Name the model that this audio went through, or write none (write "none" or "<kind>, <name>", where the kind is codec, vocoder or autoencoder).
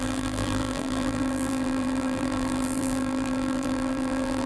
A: vocoder, BigVGAN v2